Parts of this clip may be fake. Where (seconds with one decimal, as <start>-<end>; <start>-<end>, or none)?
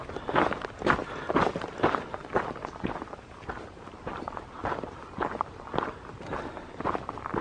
none